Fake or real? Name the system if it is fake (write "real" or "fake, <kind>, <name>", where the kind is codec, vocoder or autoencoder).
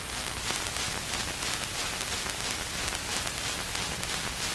real